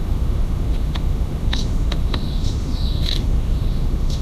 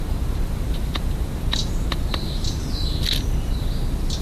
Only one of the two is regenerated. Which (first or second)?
first